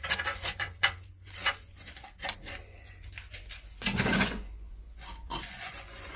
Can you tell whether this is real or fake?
fake